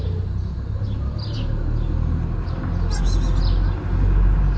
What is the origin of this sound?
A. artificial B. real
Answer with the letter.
B